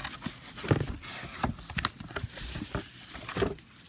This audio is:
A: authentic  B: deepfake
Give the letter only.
A